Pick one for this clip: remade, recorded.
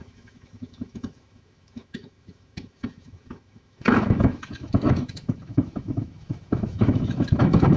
remade